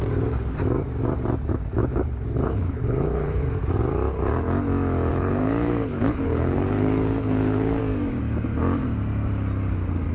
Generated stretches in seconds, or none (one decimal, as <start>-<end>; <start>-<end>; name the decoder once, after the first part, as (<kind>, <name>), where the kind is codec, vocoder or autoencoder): 1.8-3.4 (codec, HILCodec); 5.1-7.8